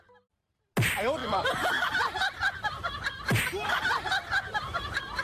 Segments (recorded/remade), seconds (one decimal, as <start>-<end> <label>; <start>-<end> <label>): 0.0-5.2 recorded